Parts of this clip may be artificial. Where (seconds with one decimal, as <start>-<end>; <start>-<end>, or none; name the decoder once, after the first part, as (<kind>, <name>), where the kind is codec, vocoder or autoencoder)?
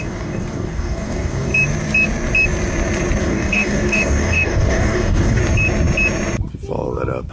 0.0-1.5 (codec, DAC); 3.2-5.4